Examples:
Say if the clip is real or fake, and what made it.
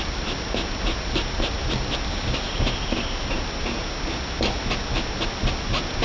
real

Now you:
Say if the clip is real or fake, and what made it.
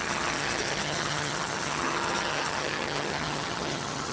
fake, vocoder, HiFi-GAN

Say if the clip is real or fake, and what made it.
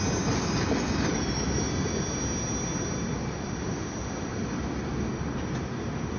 real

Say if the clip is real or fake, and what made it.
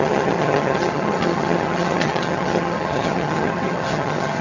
fake, vocoder, HiFi-GAN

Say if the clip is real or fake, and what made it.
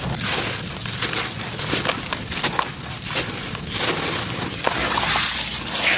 real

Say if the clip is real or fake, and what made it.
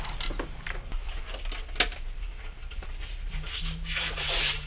real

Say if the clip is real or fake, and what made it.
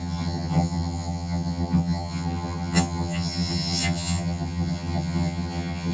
fake, vocoder, HiFi-GAN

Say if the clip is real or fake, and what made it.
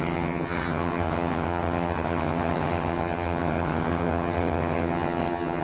fake, vocoder, HiFi-GAN